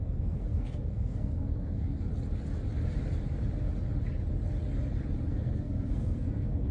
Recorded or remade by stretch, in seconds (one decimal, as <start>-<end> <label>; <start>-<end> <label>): 0.0-2.1 remade; 2.1-5.3 recorded; 5.3-6.7 remade